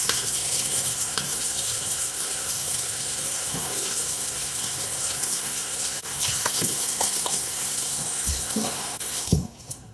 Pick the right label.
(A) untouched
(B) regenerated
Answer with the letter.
B